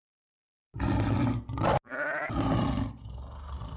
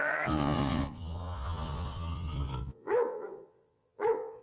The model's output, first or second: second